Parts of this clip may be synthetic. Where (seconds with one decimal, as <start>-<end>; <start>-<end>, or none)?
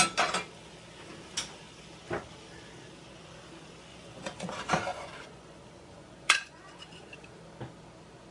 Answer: 3.9-4.5; 4.9-7.3